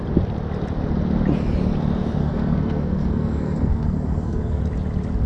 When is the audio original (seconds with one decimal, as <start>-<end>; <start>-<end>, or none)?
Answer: 0.0-2.2; 4.6-5.3